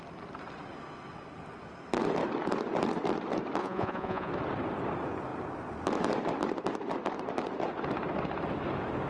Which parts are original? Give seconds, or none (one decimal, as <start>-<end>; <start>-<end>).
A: 0.0-3.6; 4.3-9.1